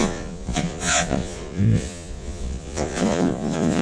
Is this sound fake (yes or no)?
yes